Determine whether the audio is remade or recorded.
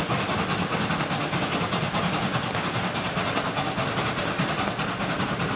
recorded